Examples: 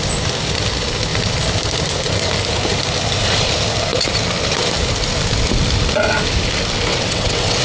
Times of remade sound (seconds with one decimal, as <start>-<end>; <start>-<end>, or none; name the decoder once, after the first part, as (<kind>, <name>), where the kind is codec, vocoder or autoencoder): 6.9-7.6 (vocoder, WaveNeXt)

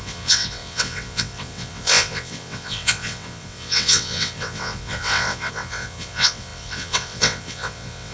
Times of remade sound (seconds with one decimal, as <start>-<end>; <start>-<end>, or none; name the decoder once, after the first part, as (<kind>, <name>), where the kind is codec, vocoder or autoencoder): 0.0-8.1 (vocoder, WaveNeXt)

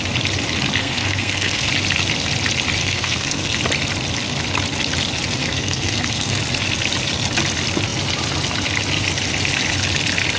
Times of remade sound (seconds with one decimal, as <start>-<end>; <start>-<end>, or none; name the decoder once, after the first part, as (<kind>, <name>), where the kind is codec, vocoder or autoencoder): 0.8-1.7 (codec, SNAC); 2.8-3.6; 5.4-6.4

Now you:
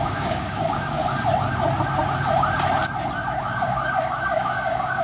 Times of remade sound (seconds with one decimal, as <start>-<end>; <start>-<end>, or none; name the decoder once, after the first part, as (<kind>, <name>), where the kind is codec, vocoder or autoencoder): 0.0-1.0 (codec, DAC); 3.4-5.0

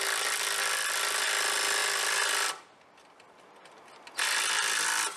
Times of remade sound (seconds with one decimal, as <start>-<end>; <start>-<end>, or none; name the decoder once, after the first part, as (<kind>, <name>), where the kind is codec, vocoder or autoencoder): none

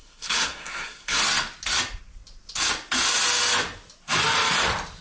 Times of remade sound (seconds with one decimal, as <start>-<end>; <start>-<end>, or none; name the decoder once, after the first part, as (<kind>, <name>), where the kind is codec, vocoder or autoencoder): 0.0-1.2 (codec, SNAC)

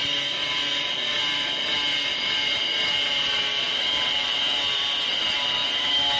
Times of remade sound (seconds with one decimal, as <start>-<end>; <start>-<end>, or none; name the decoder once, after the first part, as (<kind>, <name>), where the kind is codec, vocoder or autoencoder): 3.7-5.6 (vocoder, BigVGAN v2)